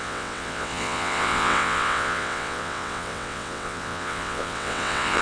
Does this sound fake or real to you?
fake